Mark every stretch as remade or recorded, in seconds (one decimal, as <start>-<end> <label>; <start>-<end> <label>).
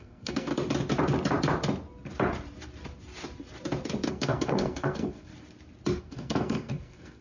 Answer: 0.0-0.5 remade; 0.5-4.1 recorded; 4.1-5.3 remade; 5.3-6.0 recorded; 6.0-7.2 remade